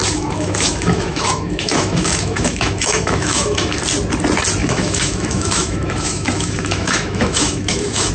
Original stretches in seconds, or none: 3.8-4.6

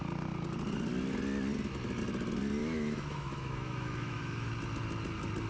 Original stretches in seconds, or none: 0.0-2.6; 4.5-5.5

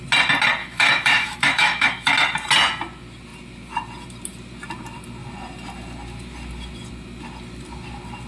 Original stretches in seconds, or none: 0.0-0.6; 2.1-8.3

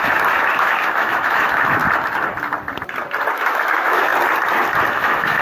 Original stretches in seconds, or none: 1.8-3.3; 4.1-4.9

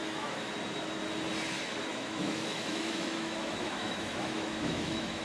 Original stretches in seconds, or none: 0.5-1.9

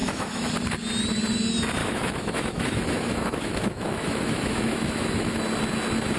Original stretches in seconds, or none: 0.5-1.8; 5.4-6.2

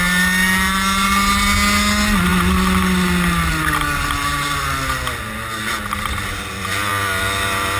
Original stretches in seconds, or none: 0.0-7.8